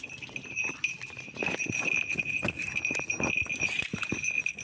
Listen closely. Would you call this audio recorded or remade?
recorded